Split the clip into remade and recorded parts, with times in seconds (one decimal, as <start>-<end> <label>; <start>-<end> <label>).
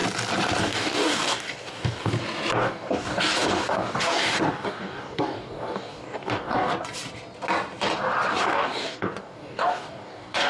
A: 0.0-0.6 recorded; 0.6-2.1 remade; 2.1-2.6 recorded; 2.6-6.7 remade; 6.7-8.4 recorded; 8.4-10.5 remade